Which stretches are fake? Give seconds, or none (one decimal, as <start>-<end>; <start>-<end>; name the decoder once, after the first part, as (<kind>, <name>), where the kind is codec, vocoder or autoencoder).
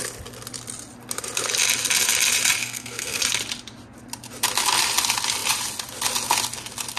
2.6-3.2 (codec, SNAC)